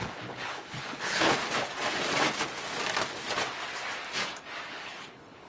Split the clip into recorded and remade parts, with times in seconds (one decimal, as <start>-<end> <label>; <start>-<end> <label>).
0.0-1.4 remade; 1.4-4.7 recorded; 4.7-5.5 remade